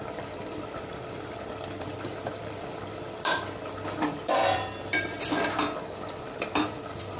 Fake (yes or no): yes